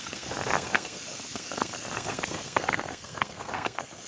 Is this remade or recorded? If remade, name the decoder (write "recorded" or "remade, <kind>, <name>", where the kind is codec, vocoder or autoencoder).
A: remade, codec, SNAC